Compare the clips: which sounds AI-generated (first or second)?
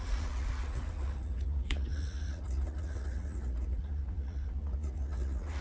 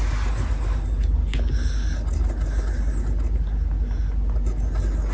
first